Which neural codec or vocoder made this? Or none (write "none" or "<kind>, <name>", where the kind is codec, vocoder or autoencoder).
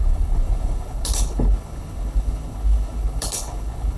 codec, HILCodec